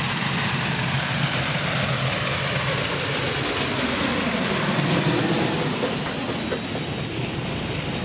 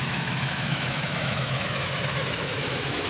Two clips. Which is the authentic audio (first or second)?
first